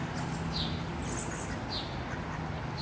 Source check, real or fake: real